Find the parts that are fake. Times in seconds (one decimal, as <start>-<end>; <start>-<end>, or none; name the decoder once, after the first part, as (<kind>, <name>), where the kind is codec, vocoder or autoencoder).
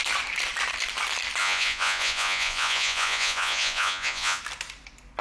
1.4-4.4 (vocoder, Vocos)